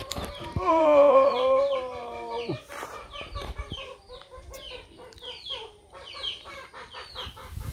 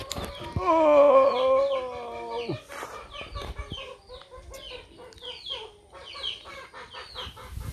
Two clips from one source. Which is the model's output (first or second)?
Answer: first